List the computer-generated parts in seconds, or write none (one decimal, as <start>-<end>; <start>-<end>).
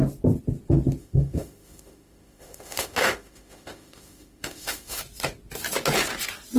1.0-5.0